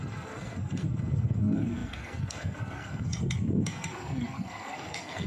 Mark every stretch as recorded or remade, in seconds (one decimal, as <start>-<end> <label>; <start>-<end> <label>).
0.0-5.3 remade